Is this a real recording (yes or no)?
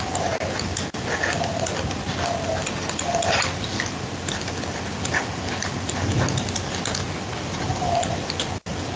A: yes